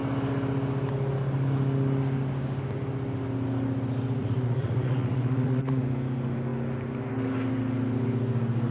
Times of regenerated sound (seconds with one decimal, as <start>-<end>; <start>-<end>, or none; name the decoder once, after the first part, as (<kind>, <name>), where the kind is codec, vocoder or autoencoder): 4.2-5.8 (vocoder, Vocos)